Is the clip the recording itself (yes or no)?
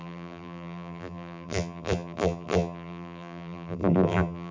no